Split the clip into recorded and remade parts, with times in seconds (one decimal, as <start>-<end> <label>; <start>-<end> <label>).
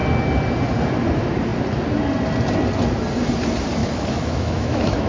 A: 0.0-3.8 recorded; 3.8-5.1 remade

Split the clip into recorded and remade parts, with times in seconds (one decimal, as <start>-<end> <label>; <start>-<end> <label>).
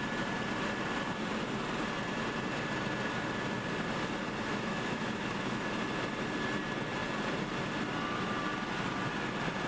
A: 0.0-4.5 recorded; 4.5-5.7 remade; 5.7-9.7 recorded